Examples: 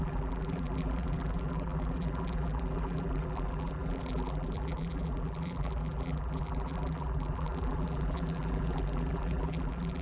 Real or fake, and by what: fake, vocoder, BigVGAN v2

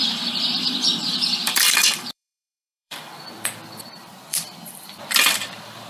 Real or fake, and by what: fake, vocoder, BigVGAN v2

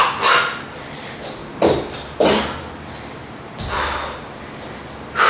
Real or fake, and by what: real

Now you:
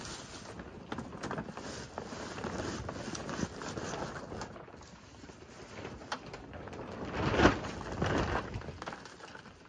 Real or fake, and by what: real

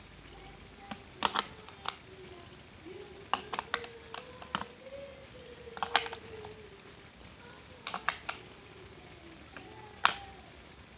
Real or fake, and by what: real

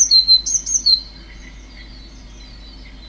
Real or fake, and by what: real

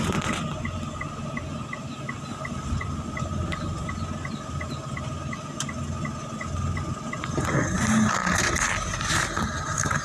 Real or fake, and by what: real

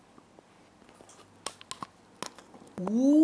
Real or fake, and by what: real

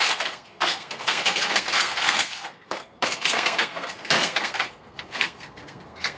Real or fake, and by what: fake, codec, SNAC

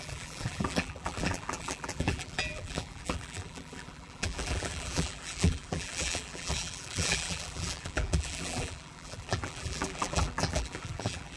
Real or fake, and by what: fake, vocoder, BigVGAN v2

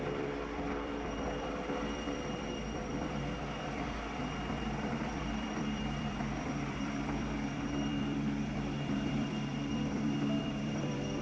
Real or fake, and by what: fake, vocoder, BigVGAN v2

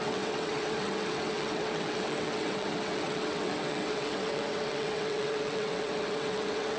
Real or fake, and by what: fake, vocoder, WaveNeXt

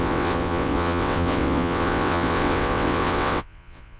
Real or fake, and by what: fake, vocoder, WaveNeXt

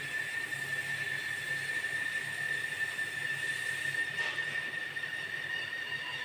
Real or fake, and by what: real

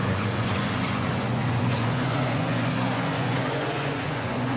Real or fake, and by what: fake, vocoder, Vocos